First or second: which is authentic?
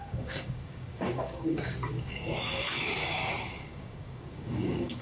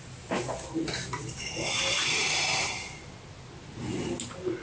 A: second